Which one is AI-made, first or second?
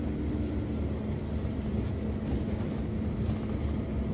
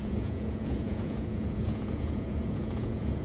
second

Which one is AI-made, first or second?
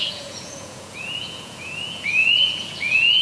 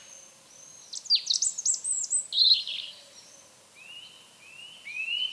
first